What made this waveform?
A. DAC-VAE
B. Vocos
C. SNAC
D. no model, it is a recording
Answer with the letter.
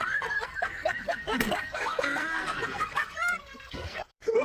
C